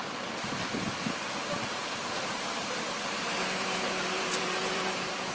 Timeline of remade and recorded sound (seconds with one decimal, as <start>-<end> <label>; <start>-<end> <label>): 0.0-2.0 recorded; 2.0-5.3 remade